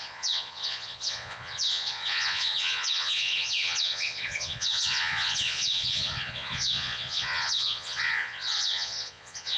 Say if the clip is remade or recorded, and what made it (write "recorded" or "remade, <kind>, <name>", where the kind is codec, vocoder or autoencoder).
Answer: remade, vocoder, Vocos